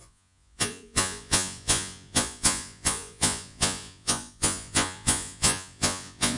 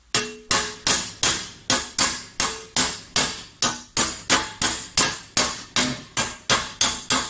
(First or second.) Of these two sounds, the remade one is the first